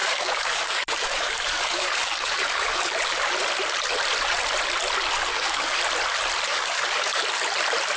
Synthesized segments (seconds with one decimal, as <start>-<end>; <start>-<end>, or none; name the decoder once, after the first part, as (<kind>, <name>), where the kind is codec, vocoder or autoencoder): 0.0-2.9 (codec, DAC); 5.3-5.8; 6.5-7.2